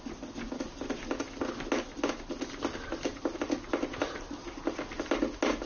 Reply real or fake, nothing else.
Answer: real